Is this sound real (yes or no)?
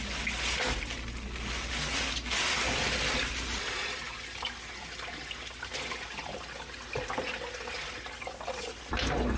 yes